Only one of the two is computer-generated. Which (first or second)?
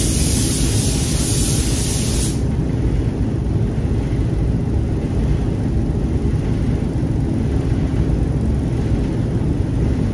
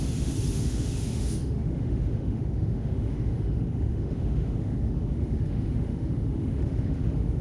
second